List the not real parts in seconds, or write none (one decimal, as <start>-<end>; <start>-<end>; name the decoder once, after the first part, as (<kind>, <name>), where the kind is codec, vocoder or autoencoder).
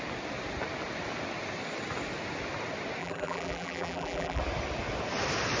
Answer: 3.0-4.4 (vocoder, BigVGAN v2)